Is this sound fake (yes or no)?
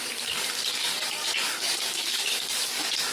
yes